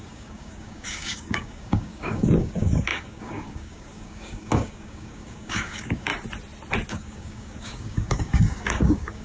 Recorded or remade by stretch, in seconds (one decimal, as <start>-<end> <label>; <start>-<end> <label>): 0.0-6.1 remade; 6.1-6.9 recorded; 6.9-9.2 remade